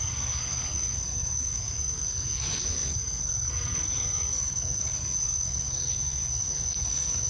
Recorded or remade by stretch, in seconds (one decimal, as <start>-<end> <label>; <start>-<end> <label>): 0.0-7.3 remade